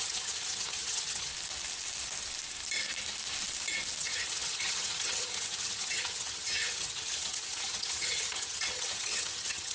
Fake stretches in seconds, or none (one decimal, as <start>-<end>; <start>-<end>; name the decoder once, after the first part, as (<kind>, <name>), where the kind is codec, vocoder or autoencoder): 0.0-1.3 (vocoder, HiFi-GAN); 4.0-9.7